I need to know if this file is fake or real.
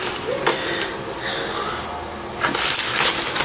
real